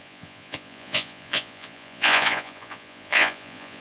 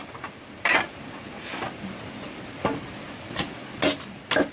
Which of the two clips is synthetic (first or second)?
first